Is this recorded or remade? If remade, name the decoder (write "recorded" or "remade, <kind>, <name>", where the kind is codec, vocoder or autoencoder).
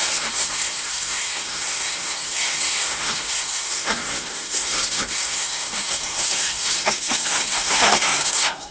remade, codec, SNAC